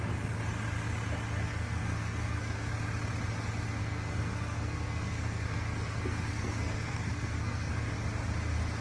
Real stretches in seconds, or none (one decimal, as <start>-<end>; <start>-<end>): 0.0-1.4; 2.7-3.8; 7.9-8.8